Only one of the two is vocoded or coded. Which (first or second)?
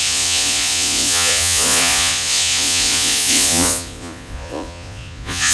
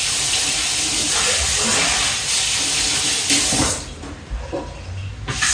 first